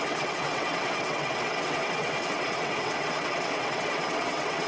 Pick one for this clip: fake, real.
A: fake